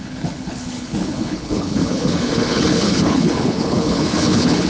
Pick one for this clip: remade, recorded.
remade